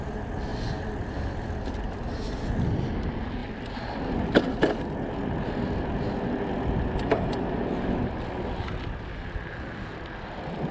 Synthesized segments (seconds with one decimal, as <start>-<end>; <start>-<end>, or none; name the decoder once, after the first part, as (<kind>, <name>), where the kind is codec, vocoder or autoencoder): none